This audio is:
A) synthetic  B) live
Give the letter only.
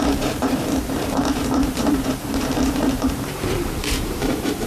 A